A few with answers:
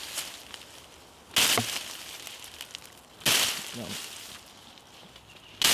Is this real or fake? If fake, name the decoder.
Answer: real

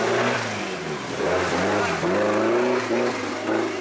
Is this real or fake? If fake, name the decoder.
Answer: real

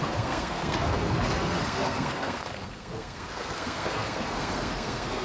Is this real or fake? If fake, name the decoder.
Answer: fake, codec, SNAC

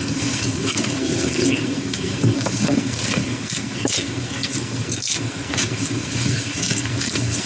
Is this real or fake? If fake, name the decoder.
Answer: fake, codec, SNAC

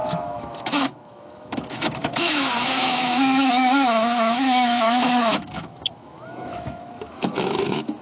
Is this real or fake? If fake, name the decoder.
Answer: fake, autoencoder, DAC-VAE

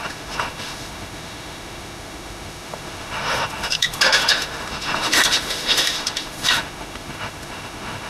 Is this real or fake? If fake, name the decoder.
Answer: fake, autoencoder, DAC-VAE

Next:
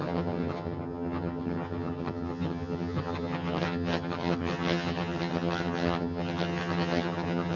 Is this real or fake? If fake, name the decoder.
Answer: fake, vocoder, HiFi-GAN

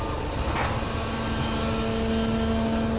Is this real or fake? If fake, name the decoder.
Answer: real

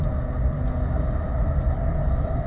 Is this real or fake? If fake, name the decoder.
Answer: real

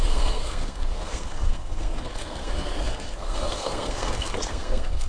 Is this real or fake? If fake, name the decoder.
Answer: fake, codec, SNAC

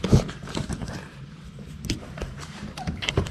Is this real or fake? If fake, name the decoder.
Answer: fake, vocoder, BigVGAN v2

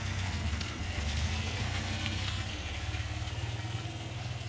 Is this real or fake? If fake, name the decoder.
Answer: fake, codec, SNAC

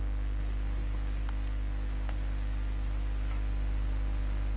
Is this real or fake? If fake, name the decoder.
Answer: real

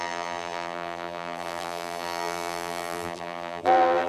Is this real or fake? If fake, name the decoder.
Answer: fake, vocoder, BigVGAN v2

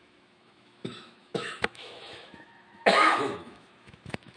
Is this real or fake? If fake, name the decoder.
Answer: fake, autoencoder, DAC-VAE